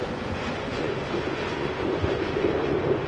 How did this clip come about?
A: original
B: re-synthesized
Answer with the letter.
B